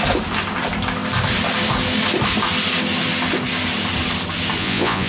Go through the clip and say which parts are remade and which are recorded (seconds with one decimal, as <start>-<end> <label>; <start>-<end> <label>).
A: 0.0-4.6 recorded; 4.6-5.1 remade